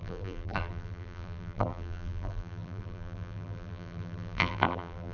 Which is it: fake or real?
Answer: fake